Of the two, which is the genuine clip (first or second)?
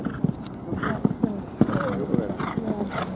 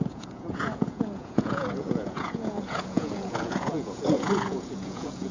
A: first